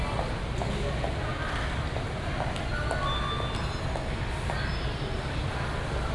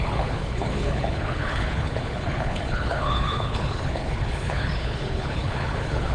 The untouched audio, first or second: first